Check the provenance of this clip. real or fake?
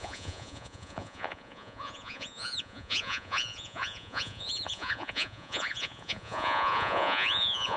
fake